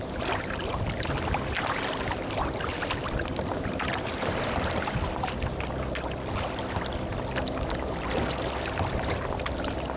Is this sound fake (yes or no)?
no